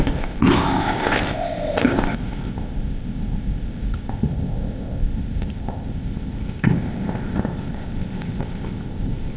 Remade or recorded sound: remade